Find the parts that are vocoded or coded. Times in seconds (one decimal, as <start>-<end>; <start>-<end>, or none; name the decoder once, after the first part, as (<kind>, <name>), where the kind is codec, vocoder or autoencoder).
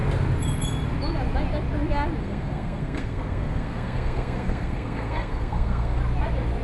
2.2-6.0 (codec, SNAC)